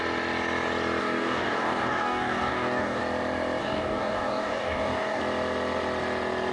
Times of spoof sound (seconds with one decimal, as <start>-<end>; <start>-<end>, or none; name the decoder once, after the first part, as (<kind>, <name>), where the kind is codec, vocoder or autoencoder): 1.0-3.0 (codec, DAC); 3.6-5.2